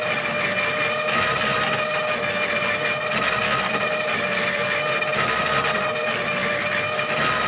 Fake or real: real